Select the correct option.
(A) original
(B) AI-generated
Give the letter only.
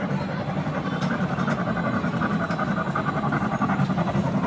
A